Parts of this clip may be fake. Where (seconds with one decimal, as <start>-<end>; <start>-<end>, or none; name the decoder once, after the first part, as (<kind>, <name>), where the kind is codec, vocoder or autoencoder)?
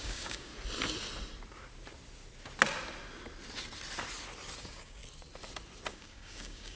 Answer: 0.0-0.5 (codec, DAC); 4.6-5.0; 5.9-6.8